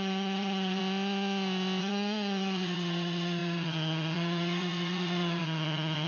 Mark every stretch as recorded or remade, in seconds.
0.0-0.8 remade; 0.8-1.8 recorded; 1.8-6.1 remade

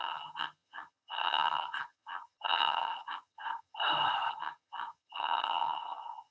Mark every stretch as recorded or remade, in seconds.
0.0-3.8 remade; 3.8-4.3 recorded; 4.3-6.3 remade

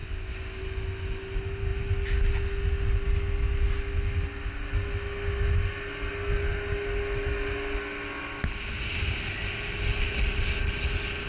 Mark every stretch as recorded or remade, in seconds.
0.0-11.3 recorded

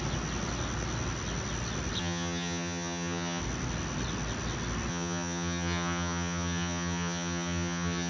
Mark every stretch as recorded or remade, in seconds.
0.0-2.0 recorded; 2.0-3.4 remade; 3.4-4.9 recorded; 4.9-8.1 remade

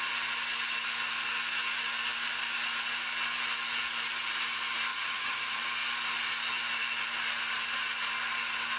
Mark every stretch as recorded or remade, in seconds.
0.0-4.9 recorded; 4.9-5.6 remade; 5.6-8.8 recorded

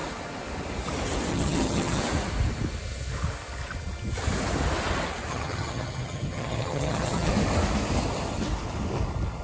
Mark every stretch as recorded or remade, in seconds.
0.0-1.3 recorded; 1.3-2.0 remade; 2.0-5.3 recorded; 5.3-7.3 remade; 7.3-9.4 recorded

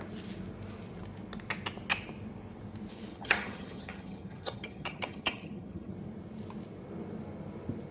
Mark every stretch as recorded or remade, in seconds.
0.0-3.1 recorded; 3.1-5.9 remade; 5.9-7.9 recorded

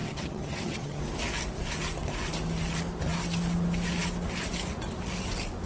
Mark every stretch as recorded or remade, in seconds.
0.0-1.0 remade; 1.0-5.7 recorded